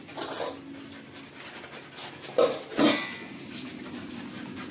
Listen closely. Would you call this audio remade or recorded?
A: recorded